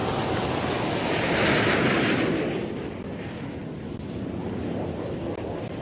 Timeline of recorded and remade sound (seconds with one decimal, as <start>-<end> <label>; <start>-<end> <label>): 0.0-5.8 recorded

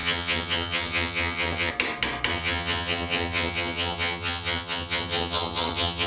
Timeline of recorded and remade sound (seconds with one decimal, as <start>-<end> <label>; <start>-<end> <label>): 0.0-1.7 remade; 1.7-2.3 recorded; 2.3-6.1 remade

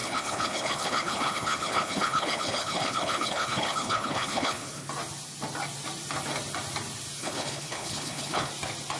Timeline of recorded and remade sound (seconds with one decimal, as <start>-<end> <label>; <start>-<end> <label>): 0.0-4.9 remade; 4.9-7.2 recorded; 7.2-8.5 remade; 8.5-9.0 recorded

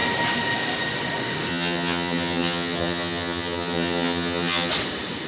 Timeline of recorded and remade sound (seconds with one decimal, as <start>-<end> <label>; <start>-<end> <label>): 0.0-1.5 recorded; 1.5-4.7 remade; 4.7-5.3 recorded